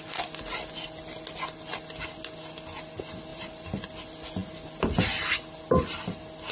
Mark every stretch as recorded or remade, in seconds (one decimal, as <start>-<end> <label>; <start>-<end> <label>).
0.0-3.3 recorded; 3.3-4.0 remade; 4.0-6.5 recorded